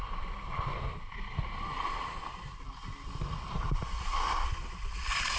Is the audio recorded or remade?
recorded